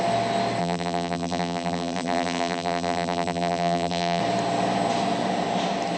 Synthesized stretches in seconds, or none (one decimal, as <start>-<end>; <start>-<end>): 0.6-4.2